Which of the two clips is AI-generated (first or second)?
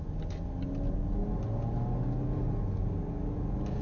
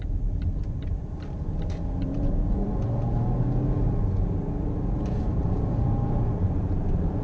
second